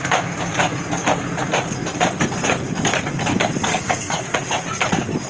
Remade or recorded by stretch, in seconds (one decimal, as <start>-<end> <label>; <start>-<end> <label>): 0.0-3.7 recorded; 3.7-4.2 remade; 4.2-5.3 recorded